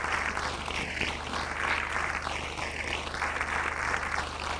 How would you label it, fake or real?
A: real